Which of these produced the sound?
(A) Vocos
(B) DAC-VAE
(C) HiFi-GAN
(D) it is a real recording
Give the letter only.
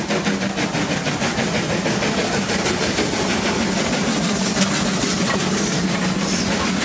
D